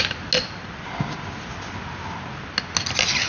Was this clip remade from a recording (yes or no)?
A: no